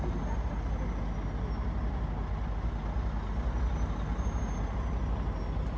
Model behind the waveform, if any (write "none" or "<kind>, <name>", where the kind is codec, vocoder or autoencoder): none